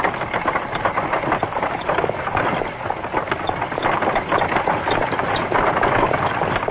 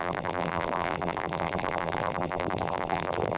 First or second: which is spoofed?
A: second